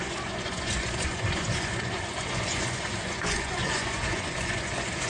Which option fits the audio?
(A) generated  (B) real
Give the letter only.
A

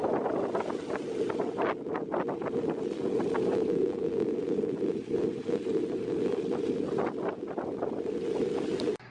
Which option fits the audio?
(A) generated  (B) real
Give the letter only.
B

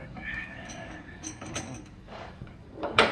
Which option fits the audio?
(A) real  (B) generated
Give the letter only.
B